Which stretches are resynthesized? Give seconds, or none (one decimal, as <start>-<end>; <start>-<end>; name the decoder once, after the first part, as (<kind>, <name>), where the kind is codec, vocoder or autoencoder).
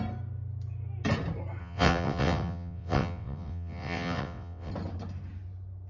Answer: 1.6-4.7 (vocoder, WaveNeXt)